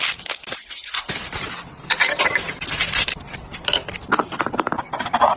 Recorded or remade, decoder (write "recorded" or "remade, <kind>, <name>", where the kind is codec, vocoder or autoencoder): remade, vocoder, BigVGAN v2